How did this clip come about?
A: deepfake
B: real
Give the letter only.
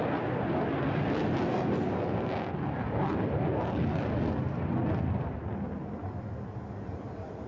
B